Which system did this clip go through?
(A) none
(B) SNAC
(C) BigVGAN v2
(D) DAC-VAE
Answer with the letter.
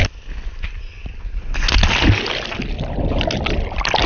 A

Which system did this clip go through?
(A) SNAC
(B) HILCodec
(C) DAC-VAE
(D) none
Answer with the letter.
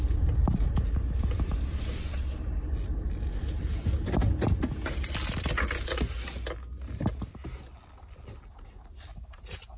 D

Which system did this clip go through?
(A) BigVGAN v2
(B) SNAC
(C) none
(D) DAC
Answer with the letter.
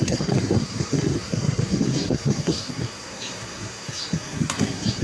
B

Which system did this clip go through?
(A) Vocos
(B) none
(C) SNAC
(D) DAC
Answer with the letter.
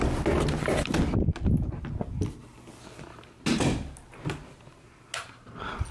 B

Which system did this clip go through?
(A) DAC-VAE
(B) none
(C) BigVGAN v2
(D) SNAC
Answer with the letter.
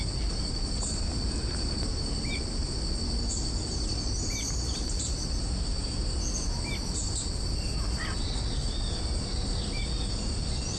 B